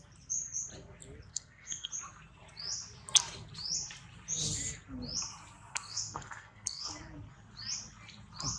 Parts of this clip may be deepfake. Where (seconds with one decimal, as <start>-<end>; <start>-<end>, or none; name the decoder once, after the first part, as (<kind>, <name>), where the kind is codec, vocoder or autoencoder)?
1.3-1.9 (codec, SNAC); 5.7-6.9